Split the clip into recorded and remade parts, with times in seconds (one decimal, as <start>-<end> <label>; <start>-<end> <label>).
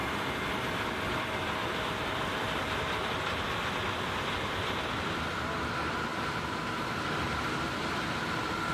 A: 0.0-8.7 remade